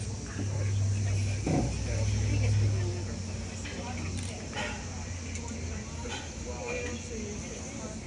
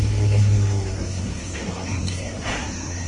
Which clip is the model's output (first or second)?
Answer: second